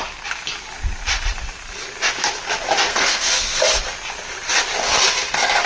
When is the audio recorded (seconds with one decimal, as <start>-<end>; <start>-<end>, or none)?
0.0-2.9; 3.6-5.7